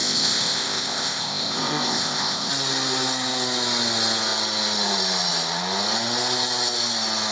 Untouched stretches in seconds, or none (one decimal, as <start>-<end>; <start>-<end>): 2.5-7.3